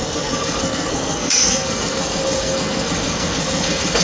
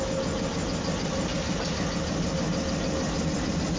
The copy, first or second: first